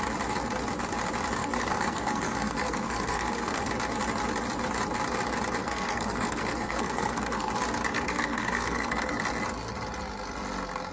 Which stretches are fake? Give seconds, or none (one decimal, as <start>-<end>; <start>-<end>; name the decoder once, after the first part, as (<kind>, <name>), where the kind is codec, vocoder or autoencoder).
1.4-3.7 (codec, SNAC); 5.6-7.5; 7.9-9.1